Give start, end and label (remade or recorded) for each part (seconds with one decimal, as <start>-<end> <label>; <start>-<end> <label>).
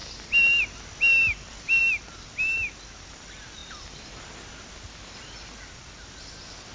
0.0-6.7 recorded